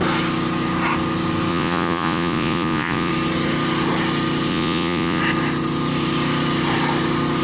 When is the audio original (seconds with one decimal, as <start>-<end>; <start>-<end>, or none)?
0.0-1.5; 3.1-4.5; 5.2-7.4